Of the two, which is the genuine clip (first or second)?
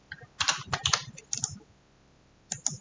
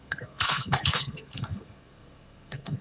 first